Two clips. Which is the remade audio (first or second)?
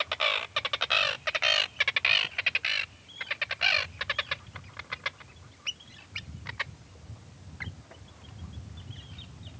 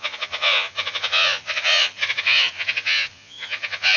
second